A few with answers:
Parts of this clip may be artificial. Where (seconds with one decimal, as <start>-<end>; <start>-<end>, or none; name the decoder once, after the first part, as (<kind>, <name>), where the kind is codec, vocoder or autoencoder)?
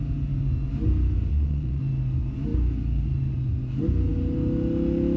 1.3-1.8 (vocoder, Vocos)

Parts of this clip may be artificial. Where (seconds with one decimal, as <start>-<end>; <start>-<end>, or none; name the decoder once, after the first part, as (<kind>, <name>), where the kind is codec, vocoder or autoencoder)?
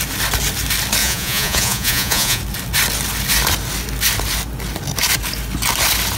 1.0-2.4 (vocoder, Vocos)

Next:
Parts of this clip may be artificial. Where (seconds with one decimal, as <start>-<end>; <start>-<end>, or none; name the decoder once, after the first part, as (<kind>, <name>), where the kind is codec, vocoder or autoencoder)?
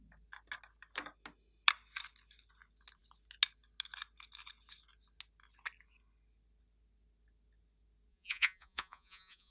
8.1-9.5 (vocoder, Vocos)